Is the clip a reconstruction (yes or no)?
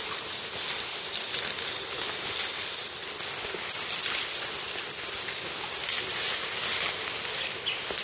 no